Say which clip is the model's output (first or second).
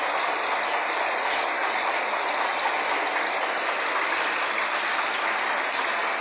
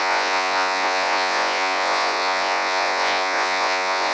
second